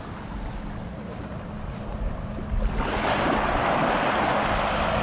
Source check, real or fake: real